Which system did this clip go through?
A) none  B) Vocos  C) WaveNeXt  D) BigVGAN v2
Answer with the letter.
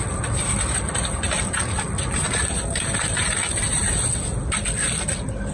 A